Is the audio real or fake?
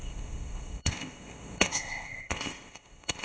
fake